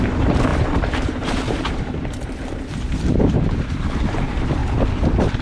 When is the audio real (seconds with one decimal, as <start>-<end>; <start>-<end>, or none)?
4.6-5.4